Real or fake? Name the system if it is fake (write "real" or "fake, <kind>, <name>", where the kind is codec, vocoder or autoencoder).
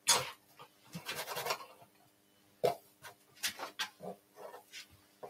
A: real